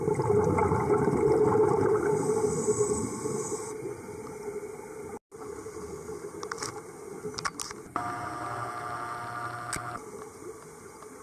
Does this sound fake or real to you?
real